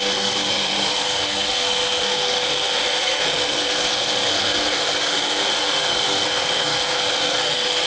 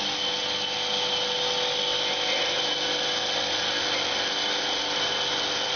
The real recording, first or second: second